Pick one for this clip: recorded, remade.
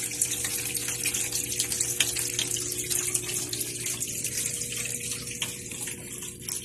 recorded